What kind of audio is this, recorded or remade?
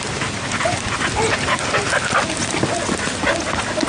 recorded